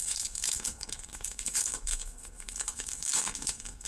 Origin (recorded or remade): remade